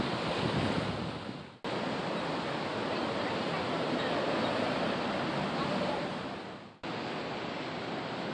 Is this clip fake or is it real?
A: real